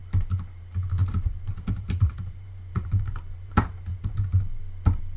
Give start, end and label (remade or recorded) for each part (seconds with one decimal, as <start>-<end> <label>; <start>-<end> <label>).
0.0-1.0 recorded; 1.0-3.5 remade; 3.5-3.9 recorded; 3.9-4.6 remade; 4.6-5.2 recorded